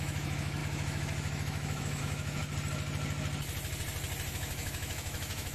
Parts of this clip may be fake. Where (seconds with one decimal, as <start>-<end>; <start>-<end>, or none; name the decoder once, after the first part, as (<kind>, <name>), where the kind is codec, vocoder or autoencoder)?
0.0-2.4 (autoencoder, DAC-VAE); 4.3-5.5